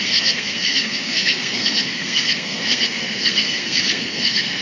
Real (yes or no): no